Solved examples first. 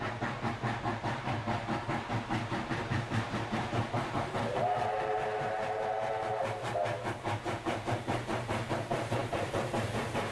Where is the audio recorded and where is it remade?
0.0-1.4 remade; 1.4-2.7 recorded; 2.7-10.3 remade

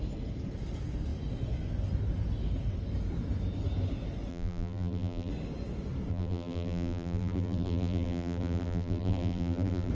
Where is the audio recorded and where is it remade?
0.0-4.3 recorded; 4.3-5.3 remade; 5.3-6.1 recorded; 6.1-9.9 remade

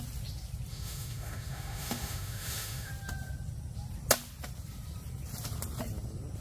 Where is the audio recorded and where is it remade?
0.0-0.7 recorded; 0.7-2.9 remade; 2.9-6.4 recorded

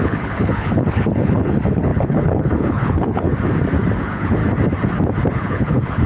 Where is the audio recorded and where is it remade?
0.0-3.3 remade; 3.3-4.0 recorded; 4.0-4.4 remade; 4.4-5.3 recorded; 5.3-6.1 remade

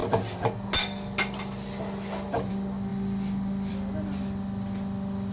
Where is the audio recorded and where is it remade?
0.0-5.3 recorded

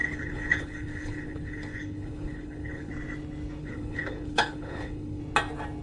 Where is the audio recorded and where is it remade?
0.0-2.9 remade; 2.9-3.6 recorded; 3.6-5.2 remade; 5.2-5.8 recorded